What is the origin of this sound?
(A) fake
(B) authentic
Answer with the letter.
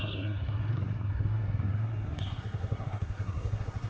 A